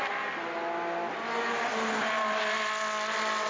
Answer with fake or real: real